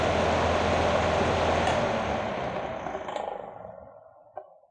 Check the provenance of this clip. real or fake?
real